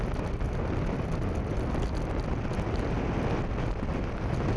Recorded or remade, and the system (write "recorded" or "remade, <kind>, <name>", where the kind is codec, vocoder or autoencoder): recorded